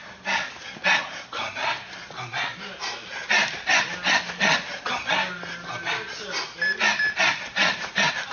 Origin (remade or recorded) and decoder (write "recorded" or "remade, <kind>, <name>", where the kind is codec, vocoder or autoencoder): recorded